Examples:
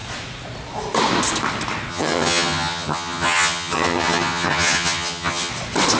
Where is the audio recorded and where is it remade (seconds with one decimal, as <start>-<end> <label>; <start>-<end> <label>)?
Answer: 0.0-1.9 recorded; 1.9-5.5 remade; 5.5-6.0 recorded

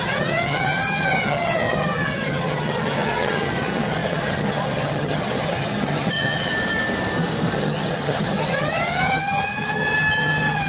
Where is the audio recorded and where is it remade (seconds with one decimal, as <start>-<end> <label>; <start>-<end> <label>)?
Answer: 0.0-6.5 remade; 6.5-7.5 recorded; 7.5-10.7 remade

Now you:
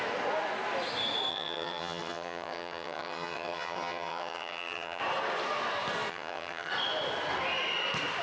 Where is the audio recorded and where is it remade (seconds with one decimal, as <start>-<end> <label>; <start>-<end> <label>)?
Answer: 0.0-1.3 recorded; 1.3-5.0 remade; 5.0-6.1 recorded; 6.1-6.7 remade; 6.7-8.2 recorded

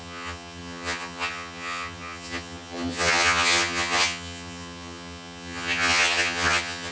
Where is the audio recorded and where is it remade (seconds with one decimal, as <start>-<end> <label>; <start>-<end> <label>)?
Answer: 0.0-6.9 remade